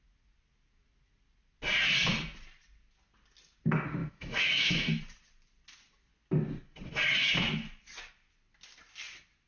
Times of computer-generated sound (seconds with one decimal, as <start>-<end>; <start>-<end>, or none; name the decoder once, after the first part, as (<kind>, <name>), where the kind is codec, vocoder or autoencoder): 4.0-5.0 (autoencoder, DAC-VAE)